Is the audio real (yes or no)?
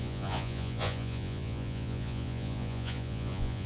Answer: no